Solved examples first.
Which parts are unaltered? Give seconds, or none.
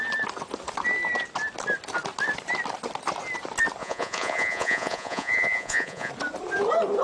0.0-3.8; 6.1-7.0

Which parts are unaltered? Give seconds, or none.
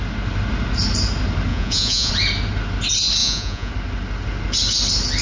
0.0-1.5; 2.1-3.2; 3.7-5.2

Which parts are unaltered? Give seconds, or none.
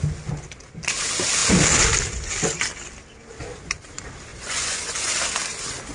0.0-4.3; 5.1-5.9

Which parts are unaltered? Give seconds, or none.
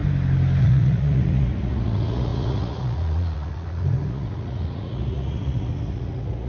0.0-0.6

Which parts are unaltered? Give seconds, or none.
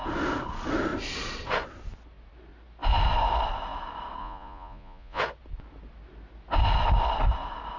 0.0-4.2; 5.2-7.8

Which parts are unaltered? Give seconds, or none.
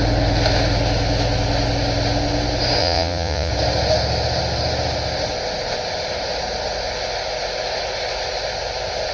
0.0-2.8; 3.5-9.1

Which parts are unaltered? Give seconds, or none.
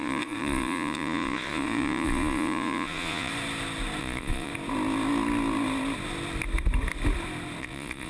3.3-4.0; 4.5-7.6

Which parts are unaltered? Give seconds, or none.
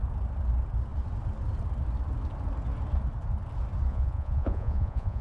0.0-3.9